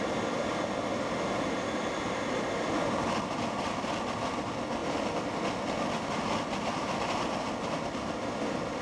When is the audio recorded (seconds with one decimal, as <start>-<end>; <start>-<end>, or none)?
0.0-8.8